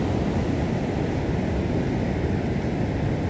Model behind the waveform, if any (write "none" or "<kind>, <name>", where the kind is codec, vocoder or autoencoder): none